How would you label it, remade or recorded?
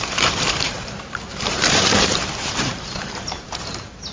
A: remade